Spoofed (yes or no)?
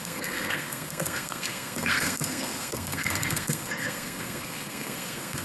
yes